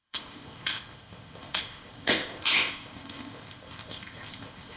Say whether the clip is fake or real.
fake